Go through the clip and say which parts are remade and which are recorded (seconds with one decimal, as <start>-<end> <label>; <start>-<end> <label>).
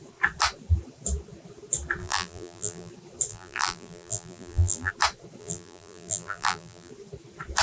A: 0.0-2.0 recorded; 2.0-2.9 remade; 2.9-3.3 recorded; 3.3-4.9 remade; 4.9-5.4 recorded; 5.4-6.9 remade; 6.9-7.6 recorded